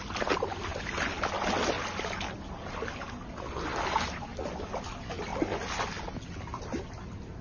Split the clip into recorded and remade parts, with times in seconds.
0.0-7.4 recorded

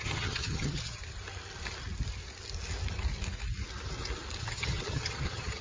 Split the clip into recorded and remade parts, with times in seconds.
0.0-1.0 remade; 1.0-4.4 recorded; 4.4-5.6 remade

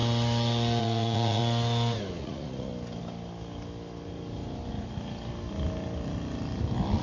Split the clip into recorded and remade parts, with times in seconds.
0.0-0.8 recorded; 0.8-1.4 remade; 1.4-2.2 recorded; 2.2-2.7 remade; 2.7-7.0 recorded

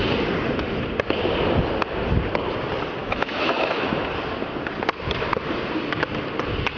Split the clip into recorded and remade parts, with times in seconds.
0.0-3.0 recorded; 3.0-4.0 remade; 4.0-6.8 recorded

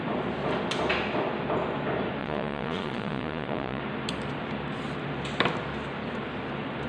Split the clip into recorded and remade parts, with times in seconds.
0.0-2.2 recorded; 2.2-3.8 remade; 3.8-6.9 recorded

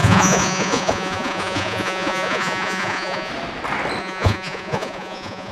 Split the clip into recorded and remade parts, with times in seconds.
0.0-3.3 remade; 3.3-4.0 recorded; 4.0-5.5 remade

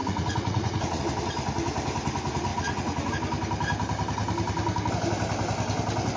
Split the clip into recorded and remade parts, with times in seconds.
0.0-1.0 remade; 1.0-2.5 recorded; 2.5-3.1 remade; 3.1-6.2 recorded